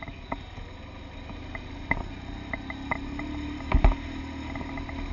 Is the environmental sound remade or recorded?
recorded